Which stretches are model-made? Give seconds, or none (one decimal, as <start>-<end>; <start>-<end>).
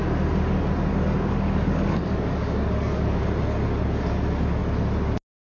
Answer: 0.9-3.2